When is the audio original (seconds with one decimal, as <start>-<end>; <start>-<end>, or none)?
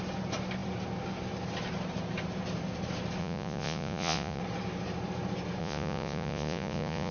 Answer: 0.0-3.2; 4.4-5.6